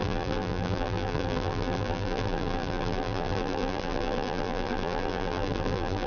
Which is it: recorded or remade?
remade